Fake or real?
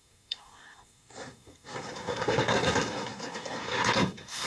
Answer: fake